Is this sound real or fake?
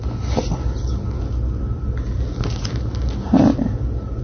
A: real